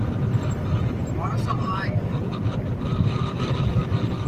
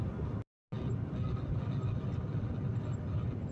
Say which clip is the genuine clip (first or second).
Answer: second